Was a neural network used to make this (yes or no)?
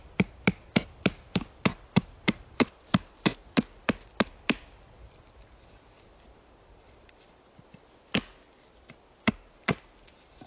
no